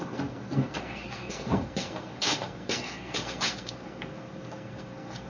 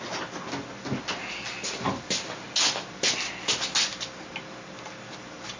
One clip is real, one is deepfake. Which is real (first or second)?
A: second